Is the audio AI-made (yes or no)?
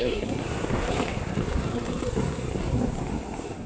yes